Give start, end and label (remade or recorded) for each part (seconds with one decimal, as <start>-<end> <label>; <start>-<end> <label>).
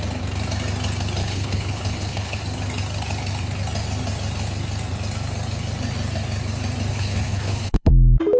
0.0-1.2 recorded; 1.2-2.4 remade; 2.4-6.9 recorded; 6.9-7.9 remade; 7.9-8.4 recorded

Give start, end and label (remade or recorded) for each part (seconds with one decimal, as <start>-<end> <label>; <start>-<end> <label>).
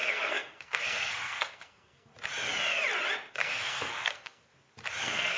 0.0-2.1 remade; 2.1-3.3 recorded; 3.3-4.5 remade; 4.5-5.0 recorded; 5.0-5.4 remade